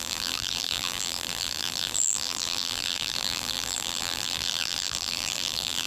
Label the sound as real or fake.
fake